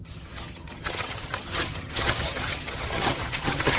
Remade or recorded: remade